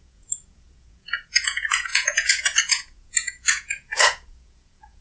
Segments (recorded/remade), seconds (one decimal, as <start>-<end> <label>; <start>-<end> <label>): 0.0-5.0 remade